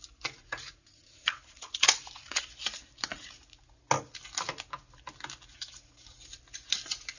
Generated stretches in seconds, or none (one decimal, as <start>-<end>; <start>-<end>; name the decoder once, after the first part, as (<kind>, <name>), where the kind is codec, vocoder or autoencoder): 0.4-2.4 (vocoder, Vocos); 3.1-3.8